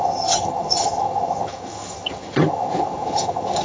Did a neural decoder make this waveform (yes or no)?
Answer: yes